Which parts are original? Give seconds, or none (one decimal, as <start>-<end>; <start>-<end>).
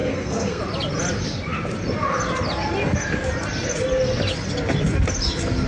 0.6-5.7